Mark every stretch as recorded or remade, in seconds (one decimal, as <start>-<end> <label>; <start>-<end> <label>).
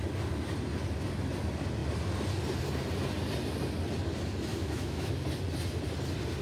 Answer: 0.0-4.5 recorded; 4.5-5.1 remade; 5.1-6.4 recorded